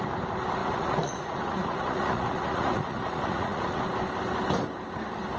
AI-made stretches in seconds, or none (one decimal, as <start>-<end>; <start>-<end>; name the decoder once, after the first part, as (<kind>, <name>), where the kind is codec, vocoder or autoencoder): 0.6-3.8 (vocoder, Vocos)